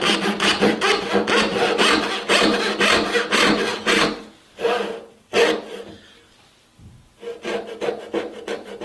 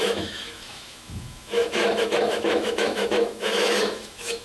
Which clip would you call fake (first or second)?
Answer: second